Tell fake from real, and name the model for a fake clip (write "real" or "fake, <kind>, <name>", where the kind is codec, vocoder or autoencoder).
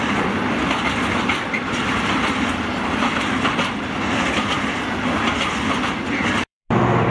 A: fake, vocoder, BigVGAN v2